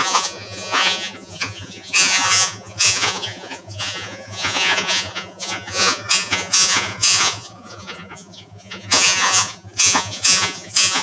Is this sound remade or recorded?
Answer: remade